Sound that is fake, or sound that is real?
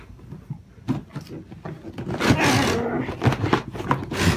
real